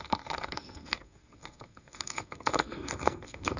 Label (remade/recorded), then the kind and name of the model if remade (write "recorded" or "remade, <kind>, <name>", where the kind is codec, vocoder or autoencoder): remade, codec, SNAC